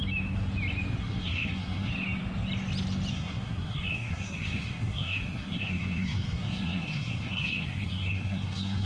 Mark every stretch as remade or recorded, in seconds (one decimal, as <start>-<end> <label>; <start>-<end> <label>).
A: 0.0-1.0 recorded; 1.0-1.9 remade; 1.9-3.1 recorded; 3.1-8.9 remade